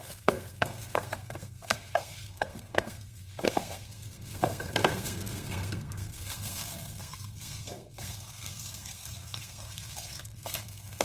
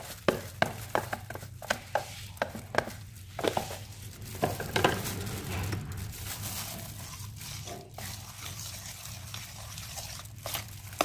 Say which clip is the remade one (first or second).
first